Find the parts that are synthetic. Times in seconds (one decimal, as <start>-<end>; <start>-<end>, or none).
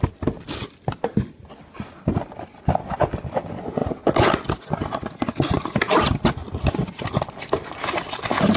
none